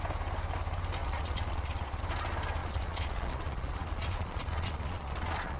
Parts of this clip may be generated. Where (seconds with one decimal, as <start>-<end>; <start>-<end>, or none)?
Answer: 1.0-2.0; 2.6-5.6